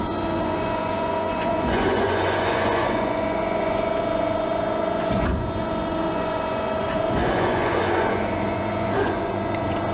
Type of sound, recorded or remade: remade